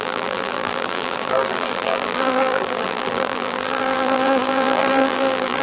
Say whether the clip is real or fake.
fake